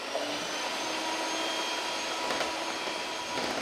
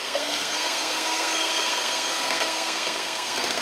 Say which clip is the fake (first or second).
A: second